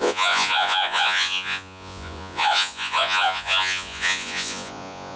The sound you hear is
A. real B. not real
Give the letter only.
B